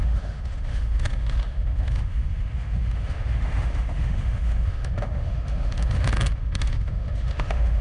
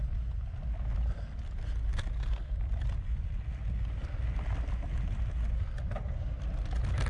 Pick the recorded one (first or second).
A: second